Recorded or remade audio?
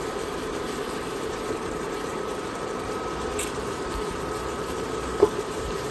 remade